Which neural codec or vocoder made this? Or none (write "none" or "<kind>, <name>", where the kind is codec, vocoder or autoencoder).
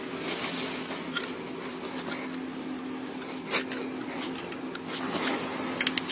none